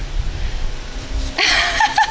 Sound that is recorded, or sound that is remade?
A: recorded